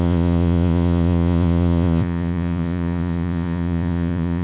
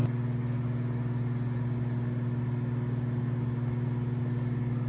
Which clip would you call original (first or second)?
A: second